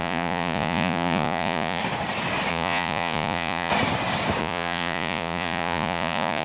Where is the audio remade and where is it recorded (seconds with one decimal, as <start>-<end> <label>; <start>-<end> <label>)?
0.0-1.8 remade; 1.8-2.5 recorded; 2.5-3.7 remade; 3.7-4.4 recorded; 4.4-6.4 remade